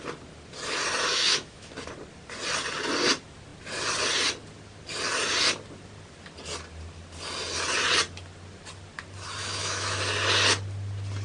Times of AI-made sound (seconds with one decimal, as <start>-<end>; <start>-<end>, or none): 1.1-1.7; 9.4-10.0